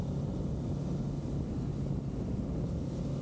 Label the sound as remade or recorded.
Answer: recorded